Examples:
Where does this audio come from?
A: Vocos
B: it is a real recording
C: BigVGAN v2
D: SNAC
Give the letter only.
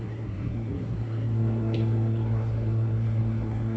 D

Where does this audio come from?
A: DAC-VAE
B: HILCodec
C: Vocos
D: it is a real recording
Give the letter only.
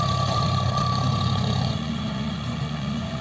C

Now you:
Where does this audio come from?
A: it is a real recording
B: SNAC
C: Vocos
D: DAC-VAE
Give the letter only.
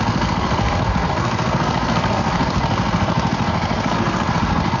B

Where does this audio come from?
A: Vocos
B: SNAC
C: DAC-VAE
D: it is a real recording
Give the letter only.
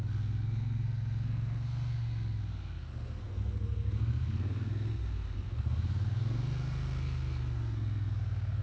B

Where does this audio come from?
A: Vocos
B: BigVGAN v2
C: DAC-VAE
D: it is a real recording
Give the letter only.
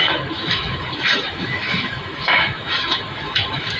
C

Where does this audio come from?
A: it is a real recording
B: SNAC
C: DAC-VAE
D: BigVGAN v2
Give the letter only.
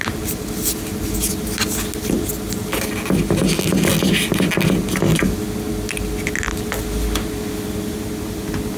A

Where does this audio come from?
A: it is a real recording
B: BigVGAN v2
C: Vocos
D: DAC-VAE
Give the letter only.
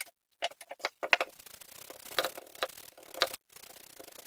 A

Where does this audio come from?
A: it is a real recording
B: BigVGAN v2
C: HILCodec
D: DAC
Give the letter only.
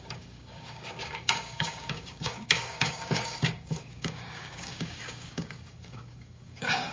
D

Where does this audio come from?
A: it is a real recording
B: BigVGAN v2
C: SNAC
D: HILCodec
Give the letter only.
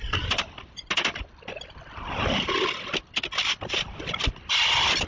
A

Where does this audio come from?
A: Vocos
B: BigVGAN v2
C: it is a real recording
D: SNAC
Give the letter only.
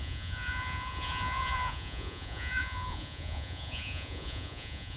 A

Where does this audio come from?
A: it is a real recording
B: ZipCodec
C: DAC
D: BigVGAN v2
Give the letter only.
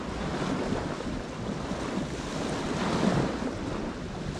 A